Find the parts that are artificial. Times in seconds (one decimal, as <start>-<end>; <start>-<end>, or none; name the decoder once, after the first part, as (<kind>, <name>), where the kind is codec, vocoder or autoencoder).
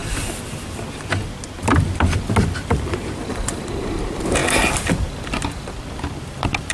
3.3-4.4 (vocoder, BigVGAN v2); 6.2-6.7